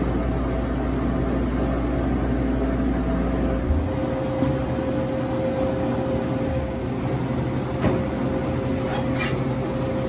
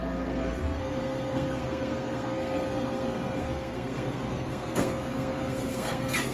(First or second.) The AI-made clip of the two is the second